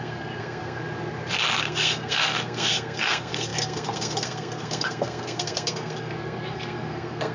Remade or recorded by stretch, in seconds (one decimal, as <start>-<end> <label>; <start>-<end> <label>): 0.0-0.8 remade; 0.8-1.6 recorded; 1.6-7.3 remade